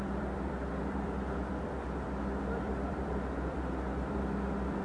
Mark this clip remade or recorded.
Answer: remade